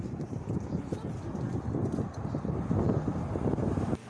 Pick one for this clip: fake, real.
real